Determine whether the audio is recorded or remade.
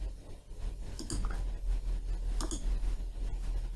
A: recorded